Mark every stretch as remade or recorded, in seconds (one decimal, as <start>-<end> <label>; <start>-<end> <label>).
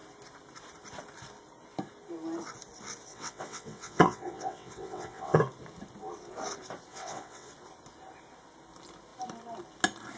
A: 0.0-3.1 recorded; 3.1-5.4 remade; 5.4-6.9 recorded; 6.9-7.5 remade; 7.5-10.2 recorded